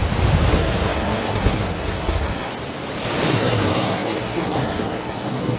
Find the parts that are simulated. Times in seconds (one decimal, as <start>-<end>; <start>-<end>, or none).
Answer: 0.5-2.5; 3.3-5.6